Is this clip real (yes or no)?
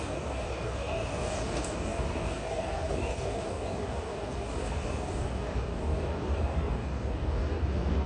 no